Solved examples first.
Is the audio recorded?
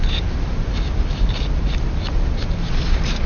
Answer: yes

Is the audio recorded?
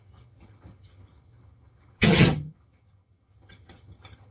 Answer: no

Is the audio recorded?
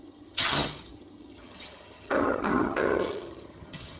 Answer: no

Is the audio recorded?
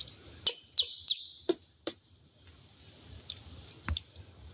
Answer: yes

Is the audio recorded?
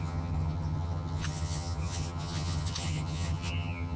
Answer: no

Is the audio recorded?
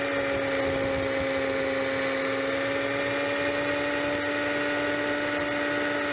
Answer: yes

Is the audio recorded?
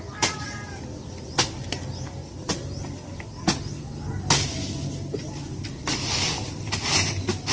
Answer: yes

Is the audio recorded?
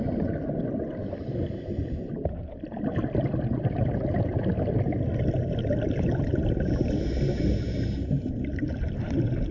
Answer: yes